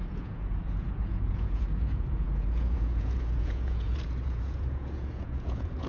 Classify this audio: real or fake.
fake